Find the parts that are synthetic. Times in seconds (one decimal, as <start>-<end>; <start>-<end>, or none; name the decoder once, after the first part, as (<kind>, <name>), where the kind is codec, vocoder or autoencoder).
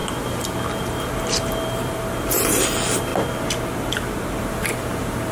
0.8-3.1 (vocoder, BigVGAN v2); 4.4-5.3